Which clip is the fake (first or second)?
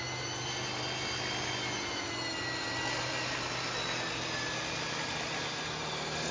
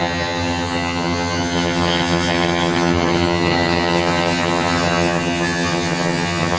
second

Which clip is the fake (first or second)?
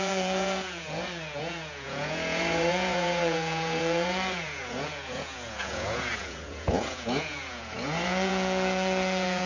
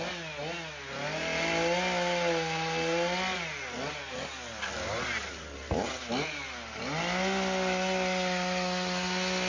first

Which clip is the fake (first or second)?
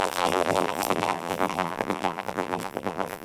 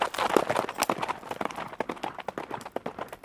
first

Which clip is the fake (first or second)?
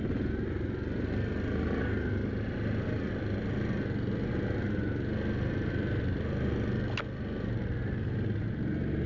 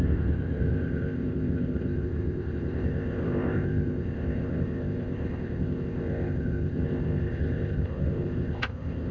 second